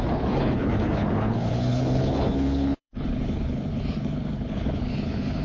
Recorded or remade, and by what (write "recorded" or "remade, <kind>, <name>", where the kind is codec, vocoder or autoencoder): remade, codec, HILCodec